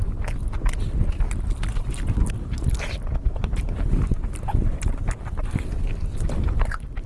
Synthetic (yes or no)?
no